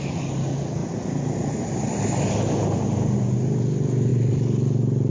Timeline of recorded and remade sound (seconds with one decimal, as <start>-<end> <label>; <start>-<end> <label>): 0.0-0.8 recorded; 0.8-2.3 remade; 2.3-4.1 recorded; 4.1-5.1 remade